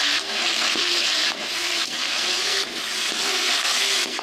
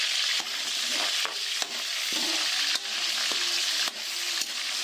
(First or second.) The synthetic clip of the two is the first